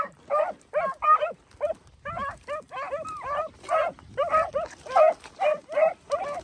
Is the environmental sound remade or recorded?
recorded